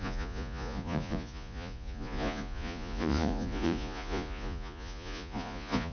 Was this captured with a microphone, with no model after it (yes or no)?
no